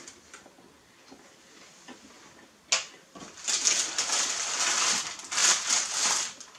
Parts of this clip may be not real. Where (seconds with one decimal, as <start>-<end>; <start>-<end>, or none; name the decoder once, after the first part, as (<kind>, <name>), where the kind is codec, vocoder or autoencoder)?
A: none